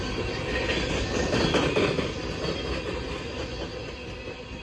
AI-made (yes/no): no